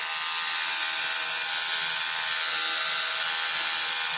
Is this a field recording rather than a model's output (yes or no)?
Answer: yes